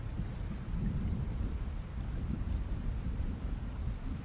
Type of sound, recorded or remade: recorded